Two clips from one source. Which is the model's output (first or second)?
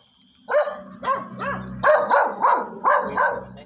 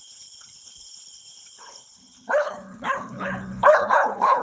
second